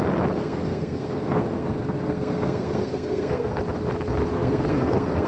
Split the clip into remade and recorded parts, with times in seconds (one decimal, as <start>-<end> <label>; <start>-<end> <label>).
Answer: 0.0-0.4 recorded; 0.4-3.6 remade; 3.6-4.3 recorded; 4.3-5.3 remade